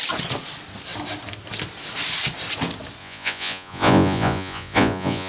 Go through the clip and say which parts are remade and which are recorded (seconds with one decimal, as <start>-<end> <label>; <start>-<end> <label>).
0.0-3.0 recorded; 3.0-5.3 remade